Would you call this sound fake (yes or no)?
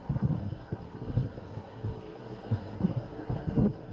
yes